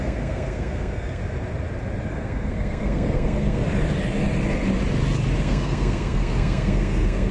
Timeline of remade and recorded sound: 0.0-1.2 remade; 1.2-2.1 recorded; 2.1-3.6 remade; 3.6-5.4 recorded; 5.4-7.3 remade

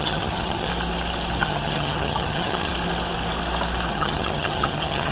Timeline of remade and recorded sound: 0.0-0.7 remade; 0.7-1.4 recorded; 1.4-2.7 remade; 2.7-3.9 recorded; 3.9-5.1 remade